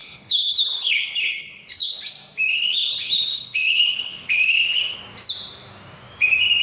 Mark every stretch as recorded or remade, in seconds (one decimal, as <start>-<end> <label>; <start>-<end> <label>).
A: 0.0-2.0 remade; 2.0-2.5 recorded; 2.5-5.0 remade; 5.0-6.6 recorded